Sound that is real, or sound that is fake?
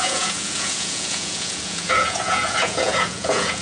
fake